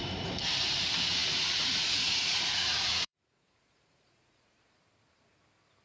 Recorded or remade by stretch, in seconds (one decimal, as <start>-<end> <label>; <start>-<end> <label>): 0.0-1.2 recorded; 1.2-4.7 remade; 4.7-5.8 recorded